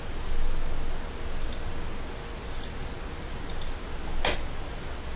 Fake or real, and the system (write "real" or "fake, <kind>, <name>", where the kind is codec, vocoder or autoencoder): real